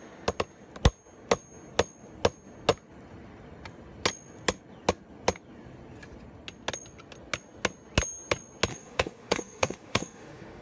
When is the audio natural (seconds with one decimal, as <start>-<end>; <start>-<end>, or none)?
0.0-8.7